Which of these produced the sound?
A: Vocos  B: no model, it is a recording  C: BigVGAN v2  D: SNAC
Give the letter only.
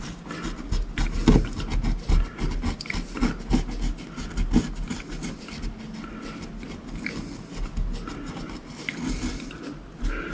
B